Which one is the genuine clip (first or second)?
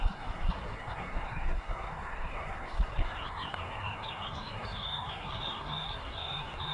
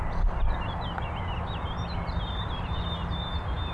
second